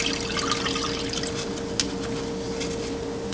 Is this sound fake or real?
real